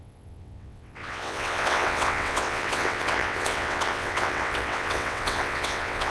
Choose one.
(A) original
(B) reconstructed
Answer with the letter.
B